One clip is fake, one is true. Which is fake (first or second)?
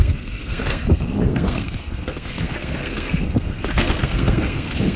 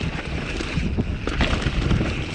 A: first